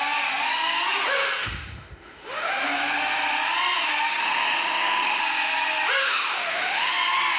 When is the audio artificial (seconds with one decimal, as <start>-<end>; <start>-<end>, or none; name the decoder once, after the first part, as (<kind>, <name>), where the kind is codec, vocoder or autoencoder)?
1.4-2.5 (autoencoder, DAC-VAE); 4.1-5.2; 6.0-6.9